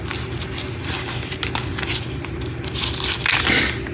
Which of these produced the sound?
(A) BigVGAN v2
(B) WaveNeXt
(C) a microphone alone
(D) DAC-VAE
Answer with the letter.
C